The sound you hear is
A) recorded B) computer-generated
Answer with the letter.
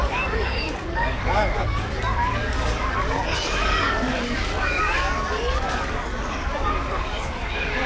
B